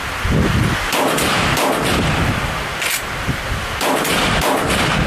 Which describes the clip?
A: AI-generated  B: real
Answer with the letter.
B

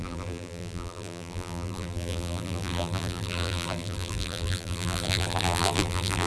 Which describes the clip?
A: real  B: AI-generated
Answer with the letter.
B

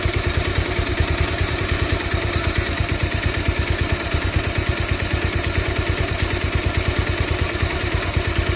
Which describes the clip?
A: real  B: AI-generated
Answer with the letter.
B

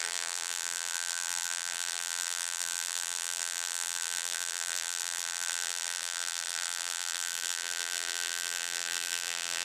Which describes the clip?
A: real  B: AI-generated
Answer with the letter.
B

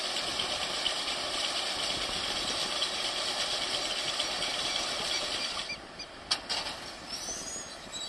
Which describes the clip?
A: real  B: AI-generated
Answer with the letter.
B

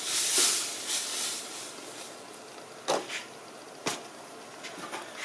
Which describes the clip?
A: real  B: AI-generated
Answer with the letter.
A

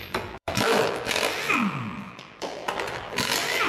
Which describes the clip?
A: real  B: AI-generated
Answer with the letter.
B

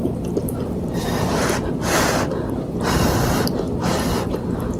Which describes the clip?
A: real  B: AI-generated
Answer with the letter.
B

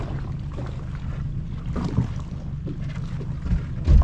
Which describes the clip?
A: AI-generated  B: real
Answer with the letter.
B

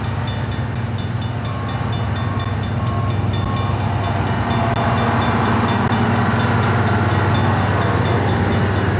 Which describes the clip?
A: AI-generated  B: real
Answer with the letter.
B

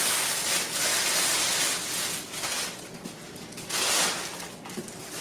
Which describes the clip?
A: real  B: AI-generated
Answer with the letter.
A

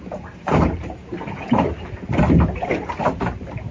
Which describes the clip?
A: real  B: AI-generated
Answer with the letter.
B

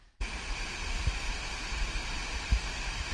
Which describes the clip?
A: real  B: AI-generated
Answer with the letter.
B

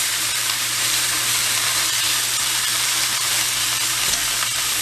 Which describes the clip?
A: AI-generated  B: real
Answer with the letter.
A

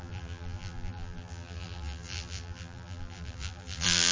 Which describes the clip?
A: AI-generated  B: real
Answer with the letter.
A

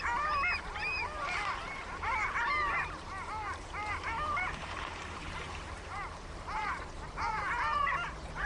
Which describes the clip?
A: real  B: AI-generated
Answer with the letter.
B